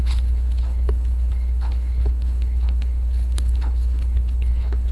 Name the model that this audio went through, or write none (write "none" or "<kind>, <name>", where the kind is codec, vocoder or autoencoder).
codec, HILCodec